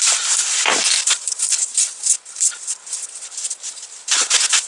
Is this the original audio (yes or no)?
no